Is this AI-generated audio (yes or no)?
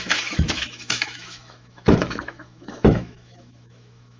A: yes